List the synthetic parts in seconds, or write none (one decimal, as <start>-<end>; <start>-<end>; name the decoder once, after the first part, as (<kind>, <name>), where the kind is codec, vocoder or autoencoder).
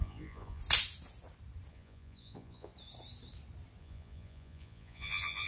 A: 0.0-0.6 (vocoder, Vocos); 1.7-2.7; 3.8-5.5